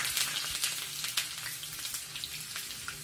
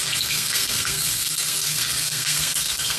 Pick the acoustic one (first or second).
first